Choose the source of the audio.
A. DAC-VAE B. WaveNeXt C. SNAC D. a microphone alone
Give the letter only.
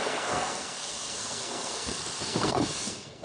C